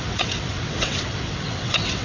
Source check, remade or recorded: remade